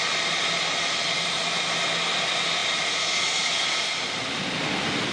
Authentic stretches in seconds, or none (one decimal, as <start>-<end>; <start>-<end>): 0.0-5.1

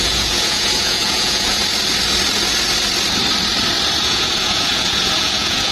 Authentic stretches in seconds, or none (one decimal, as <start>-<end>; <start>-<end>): 1.6-4.0

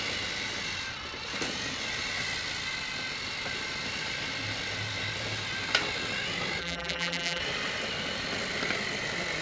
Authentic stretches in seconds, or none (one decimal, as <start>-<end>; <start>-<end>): 0.0-6.6; 7.4-9.4

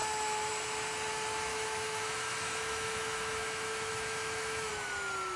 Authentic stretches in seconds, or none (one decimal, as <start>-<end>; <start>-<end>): 0.0-1.5; 4.7-5.4

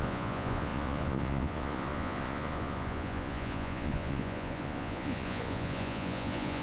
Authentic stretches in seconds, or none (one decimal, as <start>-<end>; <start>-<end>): none

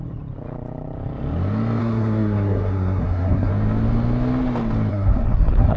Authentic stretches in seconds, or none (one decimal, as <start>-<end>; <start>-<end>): 0.0-1.8; 3.5-4.9